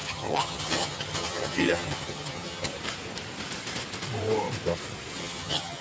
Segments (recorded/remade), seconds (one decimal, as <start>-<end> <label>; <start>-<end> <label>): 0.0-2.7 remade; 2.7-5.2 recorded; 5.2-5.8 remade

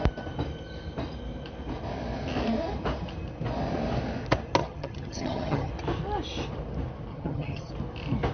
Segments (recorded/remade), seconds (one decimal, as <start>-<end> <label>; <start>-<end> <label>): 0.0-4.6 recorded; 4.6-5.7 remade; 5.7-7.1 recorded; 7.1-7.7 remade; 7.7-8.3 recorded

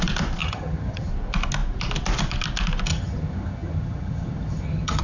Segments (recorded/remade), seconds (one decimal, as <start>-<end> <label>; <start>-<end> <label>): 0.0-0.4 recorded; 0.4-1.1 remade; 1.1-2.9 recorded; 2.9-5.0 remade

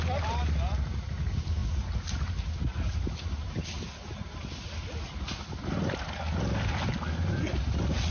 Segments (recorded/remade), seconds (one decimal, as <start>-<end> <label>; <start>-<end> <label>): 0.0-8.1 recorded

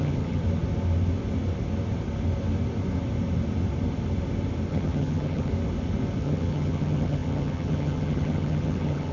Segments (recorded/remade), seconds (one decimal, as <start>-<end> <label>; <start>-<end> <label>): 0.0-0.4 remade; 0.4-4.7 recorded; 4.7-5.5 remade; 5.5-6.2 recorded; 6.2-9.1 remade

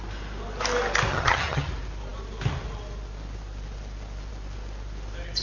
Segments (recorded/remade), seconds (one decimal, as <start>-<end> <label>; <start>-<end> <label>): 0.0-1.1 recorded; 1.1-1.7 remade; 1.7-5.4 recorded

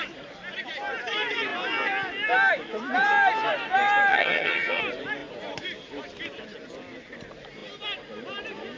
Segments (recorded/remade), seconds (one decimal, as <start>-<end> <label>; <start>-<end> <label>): 0.0-4.1 recorded; 4.1-4.8 remade; 4.8-8.8 recorded